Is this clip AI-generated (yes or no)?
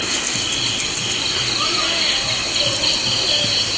no